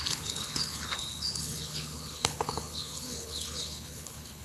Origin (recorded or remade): remade